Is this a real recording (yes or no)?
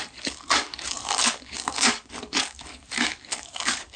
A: no